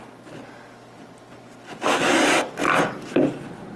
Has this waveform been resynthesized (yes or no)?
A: no